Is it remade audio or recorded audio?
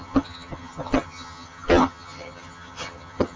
remade